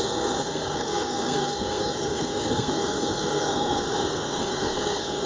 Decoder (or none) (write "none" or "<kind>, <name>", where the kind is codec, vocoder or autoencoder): codec, SNAC